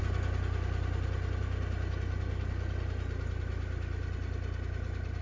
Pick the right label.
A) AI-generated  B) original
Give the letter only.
B